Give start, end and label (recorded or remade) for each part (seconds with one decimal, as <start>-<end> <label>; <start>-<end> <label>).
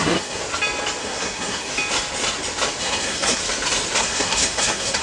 0.0-0.4 remade; 0.4-1.0 recorded; 1.0-1.7 remade; 1.7-2.8 recorded; 2.8-3.4 remade; 3.4-4.0 recorded; 4.0-5.0 remade